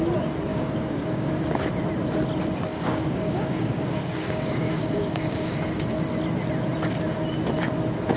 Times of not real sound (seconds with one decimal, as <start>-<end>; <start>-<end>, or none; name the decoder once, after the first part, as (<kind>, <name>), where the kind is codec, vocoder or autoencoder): 0.5-1.3 (codec, DAC); 2.7-5.6